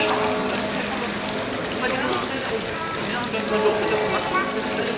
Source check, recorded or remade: recorded